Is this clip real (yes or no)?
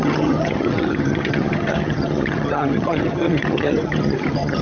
no